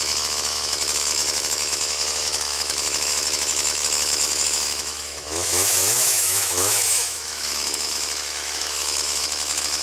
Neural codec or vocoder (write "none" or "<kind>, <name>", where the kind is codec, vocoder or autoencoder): autoencoder, DAC-VAE